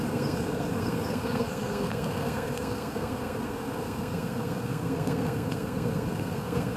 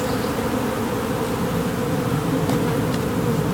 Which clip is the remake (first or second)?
first